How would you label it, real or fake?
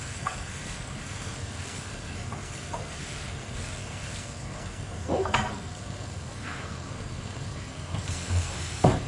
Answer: fake